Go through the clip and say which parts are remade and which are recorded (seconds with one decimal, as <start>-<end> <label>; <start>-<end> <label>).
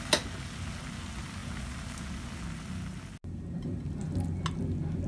0.0-5.1 recorded